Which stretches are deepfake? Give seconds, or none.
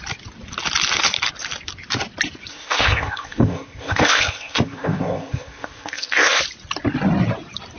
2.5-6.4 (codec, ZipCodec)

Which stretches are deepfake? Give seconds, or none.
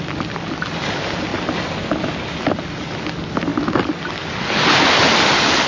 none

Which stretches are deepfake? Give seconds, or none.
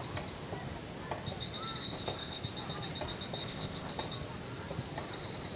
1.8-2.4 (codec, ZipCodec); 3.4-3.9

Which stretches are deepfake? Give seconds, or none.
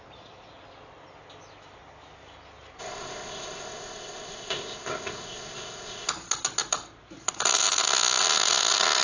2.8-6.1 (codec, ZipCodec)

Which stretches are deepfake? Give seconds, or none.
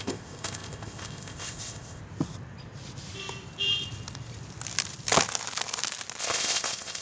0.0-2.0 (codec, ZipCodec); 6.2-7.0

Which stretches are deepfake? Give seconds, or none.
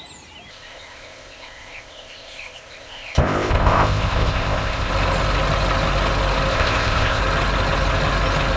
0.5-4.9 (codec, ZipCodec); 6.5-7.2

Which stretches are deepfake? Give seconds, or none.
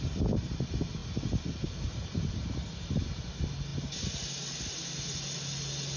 none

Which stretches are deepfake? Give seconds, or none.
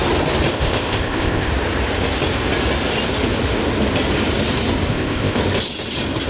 0.5-1.5 (codec, ZipCodec); 4.9-5.4